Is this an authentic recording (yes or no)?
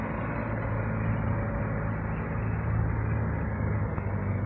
yes